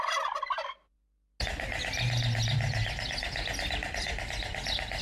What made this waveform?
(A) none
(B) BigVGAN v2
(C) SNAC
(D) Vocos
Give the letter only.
A